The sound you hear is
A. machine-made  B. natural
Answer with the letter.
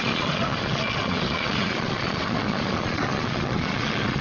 A